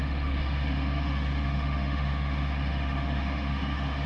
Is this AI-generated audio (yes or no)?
yes